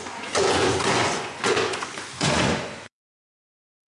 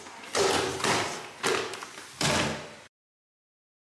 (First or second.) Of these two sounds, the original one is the second